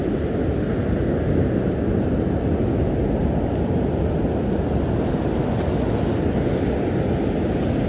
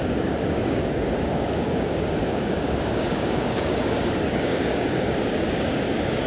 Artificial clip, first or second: second